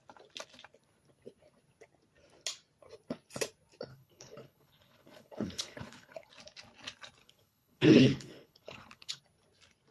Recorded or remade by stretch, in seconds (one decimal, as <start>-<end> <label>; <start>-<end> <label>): 0.0-3.9 recorded; 3.9-6.3 remade; 6.3-7.2 recorded; 7.2-9.2 remade; 9.2-9.9 recorded